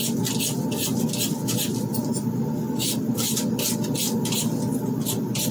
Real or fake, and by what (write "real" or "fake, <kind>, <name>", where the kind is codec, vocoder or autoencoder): real